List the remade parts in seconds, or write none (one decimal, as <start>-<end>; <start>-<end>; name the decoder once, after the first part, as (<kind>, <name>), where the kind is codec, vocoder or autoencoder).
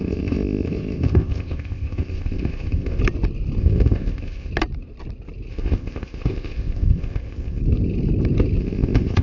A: 0.0-3.0 (codec, ZipCodec); 3.6-4.5; 5.5-7.6; 8.6-9.2